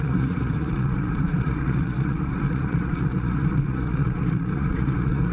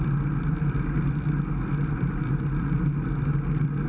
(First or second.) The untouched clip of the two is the second